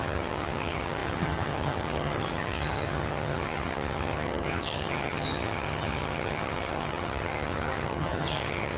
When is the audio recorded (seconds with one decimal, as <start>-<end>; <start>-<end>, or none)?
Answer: none